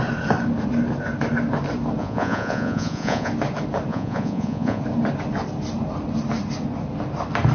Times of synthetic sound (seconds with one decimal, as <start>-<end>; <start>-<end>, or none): 2.0-3.3; 3.9-4.8